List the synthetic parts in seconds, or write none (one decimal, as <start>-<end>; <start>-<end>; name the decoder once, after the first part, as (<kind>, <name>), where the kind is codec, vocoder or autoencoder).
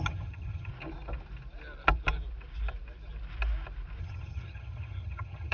0.0-0.7 (vocoder, HiFi-GAN); 4.0-5.5